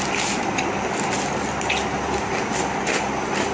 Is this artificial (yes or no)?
no